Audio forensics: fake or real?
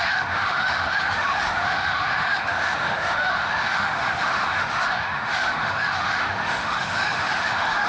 fake